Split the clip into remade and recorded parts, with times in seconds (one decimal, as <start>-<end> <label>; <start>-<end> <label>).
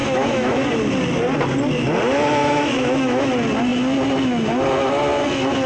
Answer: 0.0-0.7 remade; 0.7-2.4 recorded; 2.4-3.3 remade; 3.3-5.7 recorded